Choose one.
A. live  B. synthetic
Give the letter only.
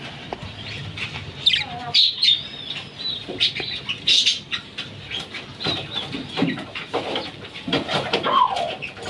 A